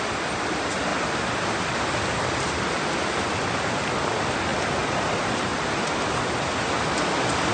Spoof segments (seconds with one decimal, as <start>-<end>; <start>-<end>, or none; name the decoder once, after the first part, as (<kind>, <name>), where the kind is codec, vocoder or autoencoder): none